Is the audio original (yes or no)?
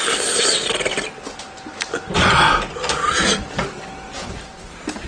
yes